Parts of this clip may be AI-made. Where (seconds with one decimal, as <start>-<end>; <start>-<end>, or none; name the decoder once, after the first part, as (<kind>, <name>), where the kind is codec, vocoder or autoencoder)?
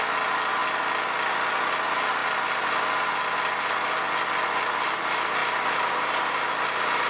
none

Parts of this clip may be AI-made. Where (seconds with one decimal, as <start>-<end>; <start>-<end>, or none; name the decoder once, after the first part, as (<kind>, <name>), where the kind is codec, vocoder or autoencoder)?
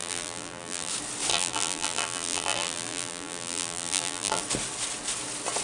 0.0-0.9 (vocoder, BigVGAN v2); 1.3-4.4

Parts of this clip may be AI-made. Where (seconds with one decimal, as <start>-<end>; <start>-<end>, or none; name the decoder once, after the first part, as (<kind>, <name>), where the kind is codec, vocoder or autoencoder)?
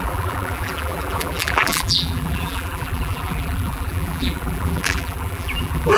0.0-6.0 (vocoder, BigVGAN v2)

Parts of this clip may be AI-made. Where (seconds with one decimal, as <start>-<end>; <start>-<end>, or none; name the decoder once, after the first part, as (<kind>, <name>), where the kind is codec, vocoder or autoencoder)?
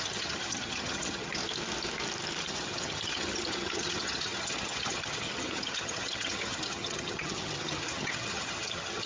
0.0-1.4 (vocoder, HiFi-GAN); 2.4-9.1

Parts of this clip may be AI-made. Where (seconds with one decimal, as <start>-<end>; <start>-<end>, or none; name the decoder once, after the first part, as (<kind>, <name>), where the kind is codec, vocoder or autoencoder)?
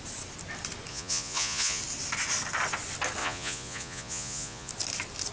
0.9-1.8 (vocoder, Vocos); 3.2-4.7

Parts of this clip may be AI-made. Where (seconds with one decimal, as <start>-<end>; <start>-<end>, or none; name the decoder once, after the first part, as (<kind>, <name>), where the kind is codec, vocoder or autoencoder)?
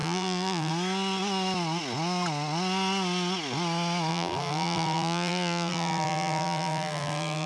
0.0-0.7 (vocoder, BigVGAN v2); 4.1-7.5